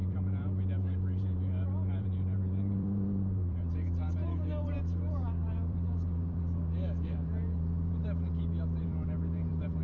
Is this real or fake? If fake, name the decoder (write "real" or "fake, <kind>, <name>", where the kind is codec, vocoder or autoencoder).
fake, vocoder, BigVGAN v2